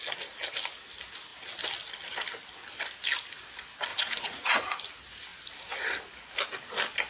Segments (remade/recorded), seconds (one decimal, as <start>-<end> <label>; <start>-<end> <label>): 0.0-3.9 recorded; 3.9-4.8 remade; 4.8-7.1 recorded